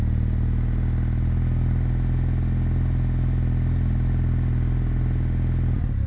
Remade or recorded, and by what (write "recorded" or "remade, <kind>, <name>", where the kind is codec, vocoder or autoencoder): recorded